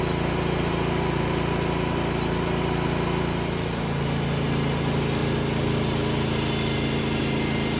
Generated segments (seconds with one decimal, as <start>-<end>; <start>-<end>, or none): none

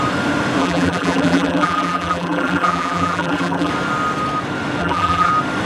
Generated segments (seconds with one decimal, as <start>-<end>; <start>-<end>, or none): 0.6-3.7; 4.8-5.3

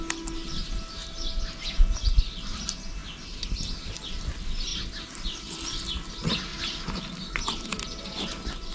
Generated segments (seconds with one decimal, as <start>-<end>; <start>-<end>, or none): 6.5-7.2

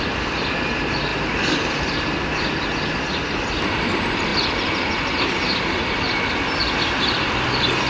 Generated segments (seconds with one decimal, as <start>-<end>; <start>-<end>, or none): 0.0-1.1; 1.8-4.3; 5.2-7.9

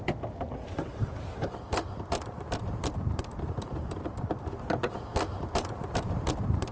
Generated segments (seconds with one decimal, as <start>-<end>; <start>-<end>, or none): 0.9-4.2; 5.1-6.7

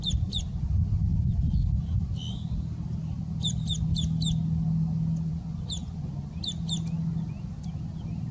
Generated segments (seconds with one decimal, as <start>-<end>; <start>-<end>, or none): none

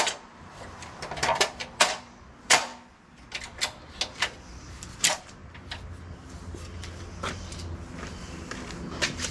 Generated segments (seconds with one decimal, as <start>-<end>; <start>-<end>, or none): 0.0-2.7; 5.0-5.4; 8.1-9.3